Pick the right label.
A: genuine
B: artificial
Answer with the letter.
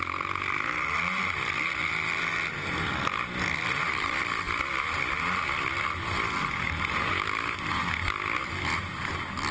A